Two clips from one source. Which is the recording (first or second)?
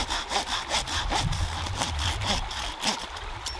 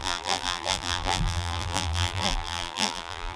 first